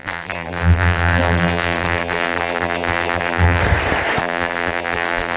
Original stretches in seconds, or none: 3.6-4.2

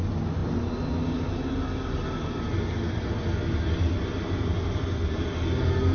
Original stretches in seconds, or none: 0.0-5.9

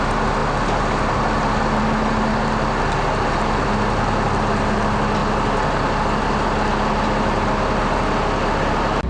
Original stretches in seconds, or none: 0.0-9.1

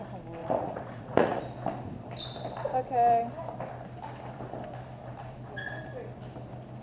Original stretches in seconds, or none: 0.0-0.4; 1.4-6.8

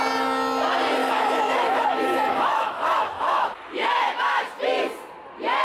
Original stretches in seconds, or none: 0.0-1.0; 4.4-5.6

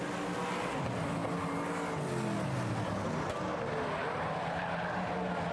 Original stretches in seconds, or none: 0.0-5.5